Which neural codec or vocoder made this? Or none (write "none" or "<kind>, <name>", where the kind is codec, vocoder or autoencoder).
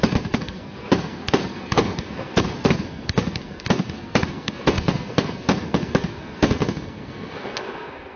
codec, SNAC